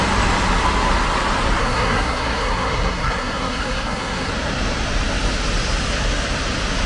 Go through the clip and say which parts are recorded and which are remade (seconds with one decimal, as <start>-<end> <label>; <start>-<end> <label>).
0.0-1.6 recorded; 1.6-4.3 remade; 4.3-6.9 recorded